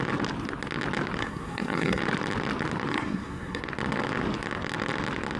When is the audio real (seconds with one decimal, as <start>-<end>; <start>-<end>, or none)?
0.0-1.2; 2.0-2.9; 3.6-5.4